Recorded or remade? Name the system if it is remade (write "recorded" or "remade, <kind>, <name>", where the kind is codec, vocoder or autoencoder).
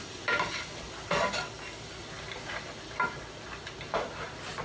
recorded